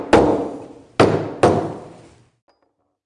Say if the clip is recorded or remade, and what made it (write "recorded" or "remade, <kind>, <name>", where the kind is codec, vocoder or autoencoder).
recorded